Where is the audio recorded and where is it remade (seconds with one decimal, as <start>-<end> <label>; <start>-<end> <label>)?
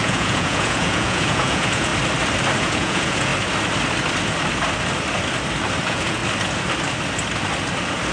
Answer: 0.0-1.9 remade; 1.9-2.6 recorded; 2.6-3.3 remade; 3.3-5.8 recorded; 5.8-6.2 remade; 6.2-8.1 recorded